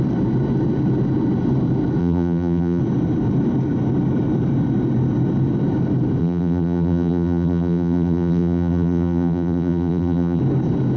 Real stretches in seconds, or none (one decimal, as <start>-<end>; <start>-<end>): 0.0-2.0; 2.8-6.2; 10.4-11.0